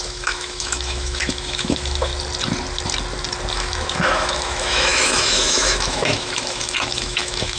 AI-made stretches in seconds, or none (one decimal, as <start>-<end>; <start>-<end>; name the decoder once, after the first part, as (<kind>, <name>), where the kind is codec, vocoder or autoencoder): 0.0-2.1 (autoencoder, DAC-VAE); 3.5-7.6